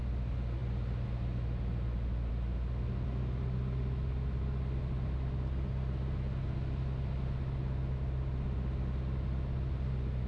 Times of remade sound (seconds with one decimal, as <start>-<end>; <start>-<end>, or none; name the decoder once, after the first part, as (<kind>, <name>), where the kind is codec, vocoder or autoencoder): none

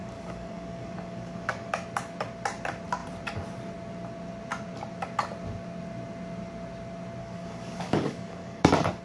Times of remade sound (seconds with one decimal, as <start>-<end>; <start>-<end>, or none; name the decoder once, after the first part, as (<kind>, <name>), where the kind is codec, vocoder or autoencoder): 0.0-1.7 (codec, DAC); 7.2-9.0

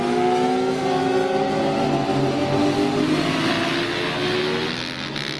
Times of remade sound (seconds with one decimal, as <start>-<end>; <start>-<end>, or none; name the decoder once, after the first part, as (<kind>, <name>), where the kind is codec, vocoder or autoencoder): none